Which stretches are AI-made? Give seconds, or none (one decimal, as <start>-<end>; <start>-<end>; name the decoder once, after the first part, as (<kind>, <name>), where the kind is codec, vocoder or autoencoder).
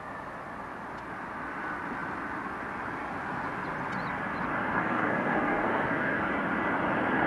4.6-6.3 (codec, SNAC)